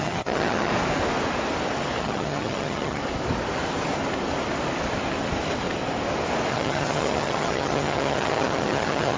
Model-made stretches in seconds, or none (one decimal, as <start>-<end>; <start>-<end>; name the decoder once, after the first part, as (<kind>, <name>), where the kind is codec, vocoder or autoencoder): 0.0-0.7 (vocoder, HiFi-GAN); 2.0-3.0; 6.5-9.2